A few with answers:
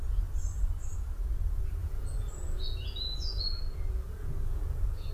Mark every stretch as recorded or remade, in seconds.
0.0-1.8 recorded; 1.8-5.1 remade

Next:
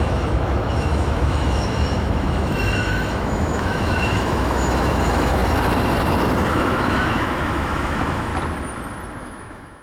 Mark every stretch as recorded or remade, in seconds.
0.0-5.4 remade; 5.4-6.5 recorded; 6.5-8.3 remade; 8.3-9.2 recorded; 9.2-9.8 remade

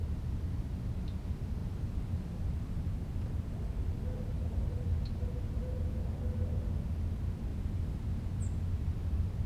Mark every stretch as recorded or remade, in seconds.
0.0-1.6 recorded; 1.6-4.8 remade; 4.8-7.5 recorded; 7.5-8.4 remade; 8.4-9.5 recorded